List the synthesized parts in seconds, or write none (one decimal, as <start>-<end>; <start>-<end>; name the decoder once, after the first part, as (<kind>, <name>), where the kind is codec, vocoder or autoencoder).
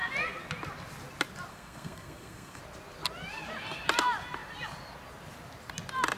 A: 1.5-2.6 (codec, SNAC)